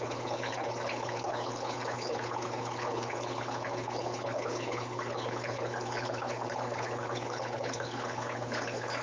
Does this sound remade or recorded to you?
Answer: remade